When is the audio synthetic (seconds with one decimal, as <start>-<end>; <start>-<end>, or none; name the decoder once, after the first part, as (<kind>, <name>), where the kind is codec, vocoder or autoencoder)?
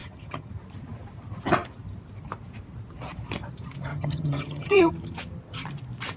0.0-0.5 (vocoder, HiFi-GAN); 3.9-4.9